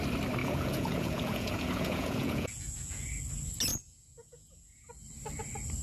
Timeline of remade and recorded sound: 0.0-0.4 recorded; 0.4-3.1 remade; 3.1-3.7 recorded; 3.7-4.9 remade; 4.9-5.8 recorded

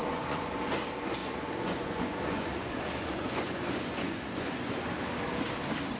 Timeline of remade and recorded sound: 0.0-0.7 remade; 0.7-1.2 recorded; 1.2-4.7 remade; 4.7-6.0 recorded